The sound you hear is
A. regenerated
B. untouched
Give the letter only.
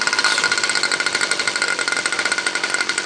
B